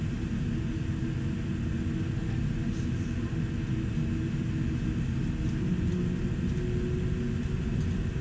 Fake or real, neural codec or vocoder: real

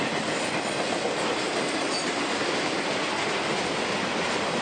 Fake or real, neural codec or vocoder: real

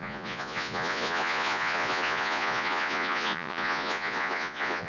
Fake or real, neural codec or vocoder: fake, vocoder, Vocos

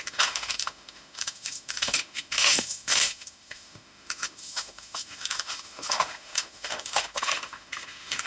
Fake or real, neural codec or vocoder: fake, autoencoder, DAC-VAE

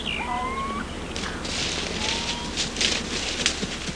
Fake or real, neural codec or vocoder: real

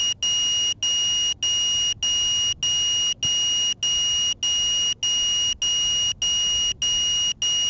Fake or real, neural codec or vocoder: real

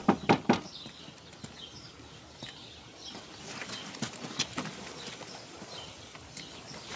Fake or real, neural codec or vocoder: real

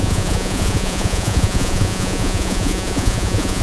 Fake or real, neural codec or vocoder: fake, vocoder, Vocos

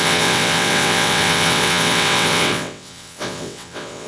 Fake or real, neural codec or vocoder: fake, vocoder, WaveNeXt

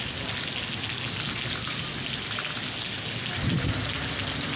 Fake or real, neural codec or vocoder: real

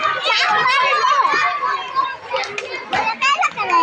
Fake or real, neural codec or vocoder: real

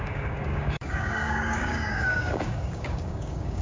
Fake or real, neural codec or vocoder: fake, codec, DAC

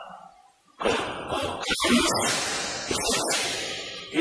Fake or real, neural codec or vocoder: real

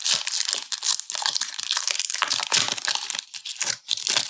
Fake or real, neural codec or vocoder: real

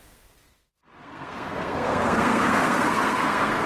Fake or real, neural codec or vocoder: fake, codec, SNAC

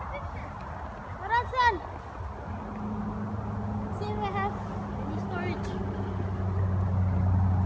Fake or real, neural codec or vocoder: real